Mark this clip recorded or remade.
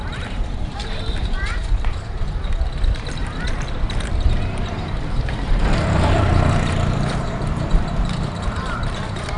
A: remade